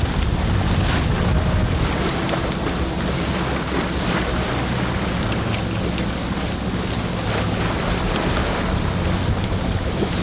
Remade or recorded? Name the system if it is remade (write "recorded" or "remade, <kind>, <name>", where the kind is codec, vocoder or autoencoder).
recorded